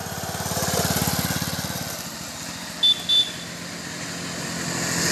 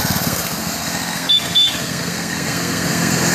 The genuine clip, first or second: first